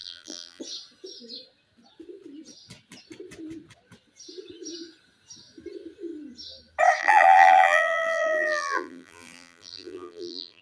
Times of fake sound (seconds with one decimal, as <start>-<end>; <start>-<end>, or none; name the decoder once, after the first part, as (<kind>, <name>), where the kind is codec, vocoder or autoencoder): 0.0-0.6 (vocoder, BigVGAN v2); 7.0-10.6